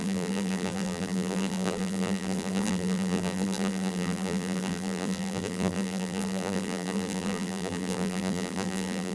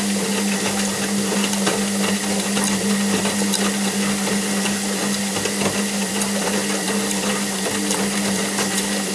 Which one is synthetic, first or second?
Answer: first